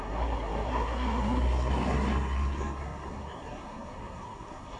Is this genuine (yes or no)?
no